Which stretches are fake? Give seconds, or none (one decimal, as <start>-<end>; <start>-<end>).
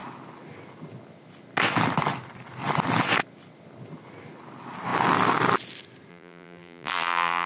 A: 6.1-7.5